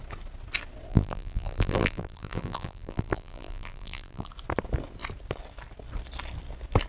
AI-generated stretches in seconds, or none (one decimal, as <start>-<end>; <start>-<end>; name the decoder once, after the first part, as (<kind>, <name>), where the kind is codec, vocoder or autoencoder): 0.9-4.3 (vocoder, BigVGAN v2)